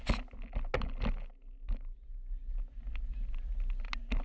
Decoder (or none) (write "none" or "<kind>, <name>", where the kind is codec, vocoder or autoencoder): none